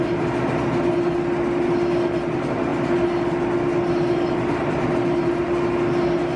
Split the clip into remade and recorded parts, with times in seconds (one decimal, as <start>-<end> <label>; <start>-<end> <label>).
0.0-6.4 recorded